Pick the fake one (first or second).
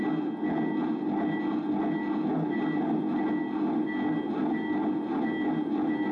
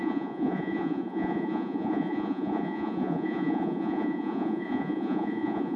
second